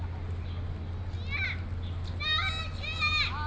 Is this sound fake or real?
real